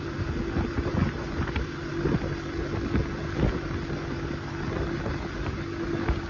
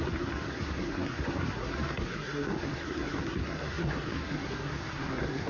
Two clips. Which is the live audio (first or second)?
first